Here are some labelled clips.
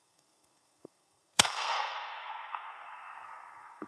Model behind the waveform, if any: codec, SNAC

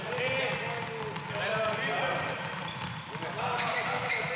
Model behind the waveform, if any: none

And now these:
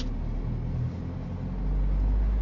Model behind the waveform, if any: none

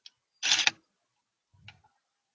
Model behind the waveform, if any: none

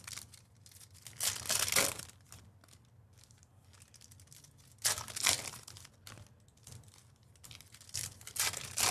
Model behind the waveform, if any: none